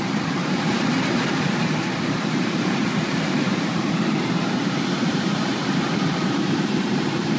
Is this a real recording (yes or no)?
no